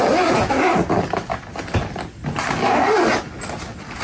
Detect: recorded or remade recorded